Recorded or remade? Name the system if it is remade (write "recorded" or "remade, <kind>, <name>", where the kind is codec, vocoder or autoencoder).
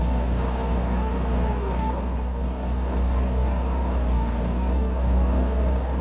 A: remade, codec, DAC